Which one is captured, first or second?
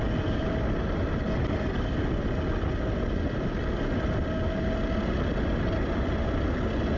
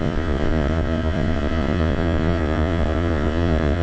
first